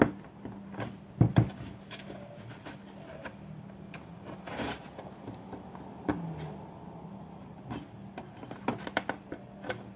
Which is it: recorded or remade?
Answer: recorded